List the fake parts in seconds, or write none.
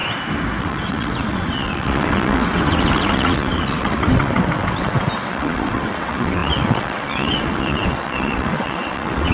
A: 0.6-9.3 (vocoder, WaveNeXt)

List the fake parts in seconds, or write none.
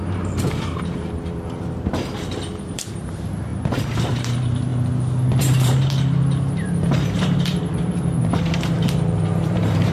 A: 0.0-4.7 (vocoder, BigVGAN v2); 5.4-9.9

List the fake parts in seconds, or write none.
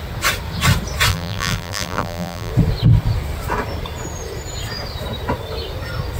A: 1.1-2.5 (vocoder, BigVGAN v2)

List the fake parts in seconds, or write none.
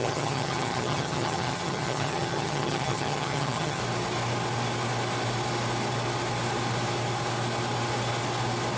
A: 0.0-3.8 (vocoder, HiFi-GAN)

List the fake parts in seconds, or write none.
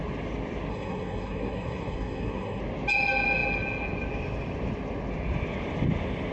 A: 0.7-2.6 (codec, SNAC)